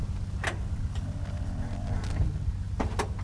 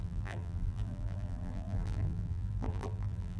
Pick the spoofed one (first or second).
second